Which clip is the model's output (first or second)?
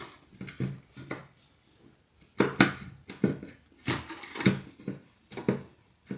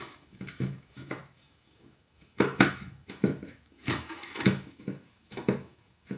second